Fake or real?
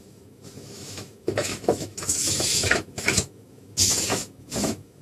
fake